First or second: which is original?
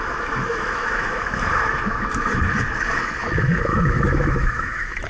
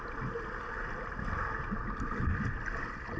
second